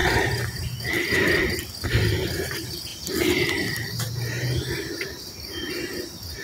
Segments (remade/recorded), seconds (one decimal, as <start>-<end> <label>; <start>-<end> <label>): 0.0-1.4 remade; 1.4-2.9 recorded; 2.9-5.7 remade; 5.7-6.4 recorded